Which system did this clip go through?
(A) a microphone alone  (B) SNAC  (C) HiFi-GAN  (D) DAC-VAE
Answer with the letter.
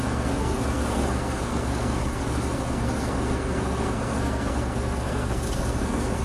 B